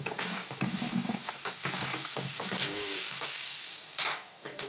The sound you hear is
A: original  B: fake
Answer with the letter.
B